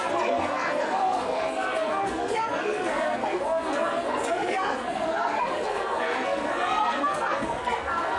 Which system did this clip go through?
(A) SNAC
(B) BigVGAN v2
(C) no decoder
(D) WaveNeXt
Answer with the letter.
A